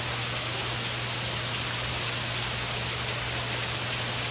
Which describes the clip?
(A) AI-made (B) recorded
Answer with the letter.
B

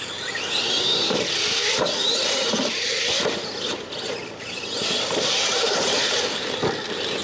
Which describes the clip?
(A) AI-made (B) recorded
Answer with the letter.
B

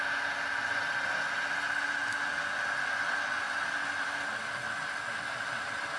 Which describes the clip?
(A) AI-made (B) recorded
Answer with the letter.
B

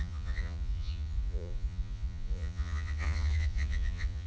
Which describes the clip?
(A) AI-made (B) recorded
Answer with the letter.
A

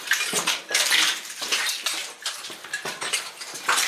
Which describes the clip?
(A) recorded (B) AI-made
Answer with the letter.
B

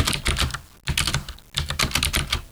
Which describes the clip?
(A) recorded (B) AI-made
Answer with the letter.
A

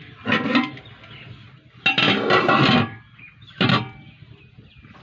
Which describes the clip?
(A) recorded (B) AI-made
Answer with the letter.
A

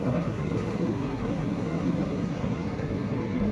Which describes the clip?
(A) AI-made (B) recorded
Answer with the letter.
A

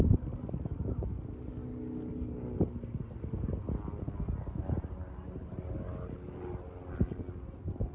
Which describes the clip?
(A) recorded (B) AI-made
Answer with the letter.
A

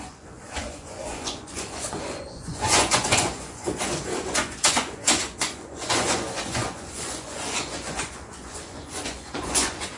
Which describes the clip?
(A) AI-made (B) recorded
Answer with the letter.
A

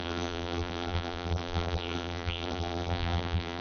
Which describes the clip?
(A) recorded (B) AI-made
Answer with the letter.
B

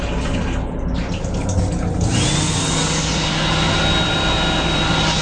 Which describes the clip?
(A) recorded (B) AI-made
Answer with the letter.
A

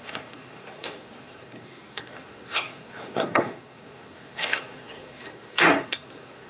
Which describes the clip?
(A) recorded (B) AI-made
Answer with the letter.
B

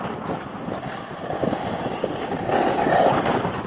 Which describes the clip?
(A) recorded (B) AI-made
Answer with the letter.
A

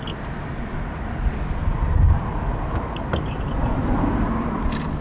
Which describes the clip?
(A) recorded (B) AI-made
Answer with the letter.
A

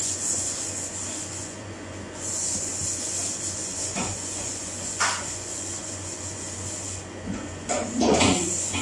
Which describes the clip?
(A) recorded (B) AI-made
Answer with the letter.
B